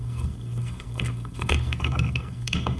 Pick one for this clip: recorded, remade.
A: remade